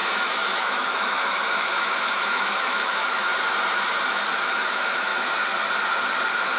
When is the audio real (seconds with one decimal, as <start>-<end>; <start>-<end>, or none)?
3.3-4.1; 5.1-6.6